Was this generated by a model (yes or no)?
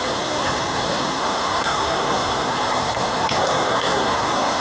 yes